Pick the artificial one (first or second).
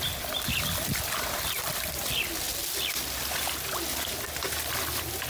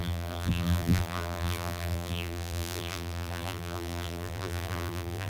second